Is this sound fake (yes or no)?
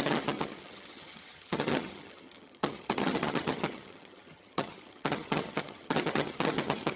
yes